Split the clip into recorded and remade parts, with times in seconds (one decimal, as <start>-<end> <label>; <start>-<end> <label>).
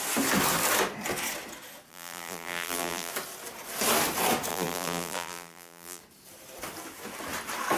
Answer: 0.0-1.9 recorded; 1.9-3.1 remade; 3.1-4.5 recorded; 4.5-6.0 remade; 6.0-7.8 recorded